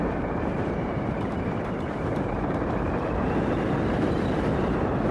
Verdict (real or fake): fake